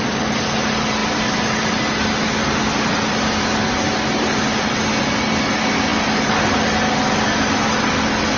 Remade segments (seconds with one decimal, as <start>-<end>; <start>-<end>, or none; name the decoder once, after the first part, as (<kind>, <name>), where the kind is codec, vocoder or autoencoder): none